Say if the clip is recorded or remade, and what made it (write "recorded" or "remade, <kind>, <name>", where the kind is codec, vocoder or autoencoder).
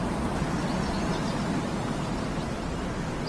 recorded